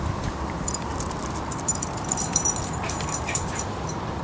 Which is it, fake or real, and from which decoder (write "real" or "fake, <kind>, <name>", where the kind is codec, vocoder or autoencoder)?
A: fake, vocoder, BigVGAN v2